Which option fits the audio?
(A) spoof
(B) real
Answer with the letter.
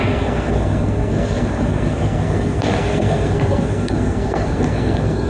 A